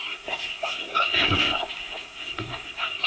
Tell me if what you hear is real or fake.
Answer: fake